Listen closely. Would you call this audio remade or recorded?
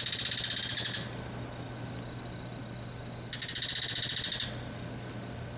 recorded